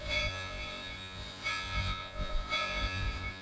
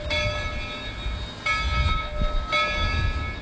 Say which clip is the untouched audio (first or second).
second